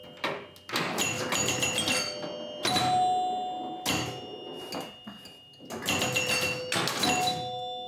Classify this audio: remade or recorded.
recorded